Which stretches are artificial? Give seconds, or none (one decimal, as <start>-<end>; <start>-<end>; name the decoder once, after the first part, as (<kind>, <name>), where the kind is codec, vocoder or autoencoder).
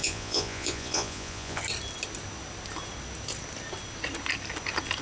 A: 0.0-1.6 (vocoder, Vocos)